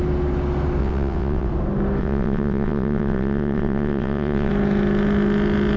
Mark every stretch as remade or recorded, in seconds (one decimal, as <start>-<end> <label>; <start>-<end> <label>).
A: 0.0-0.8 recorded; 0.8-1.5 remade; 1.5-2.0 recorded; 2.0-4.5 remade; 4.5-5.8 recorded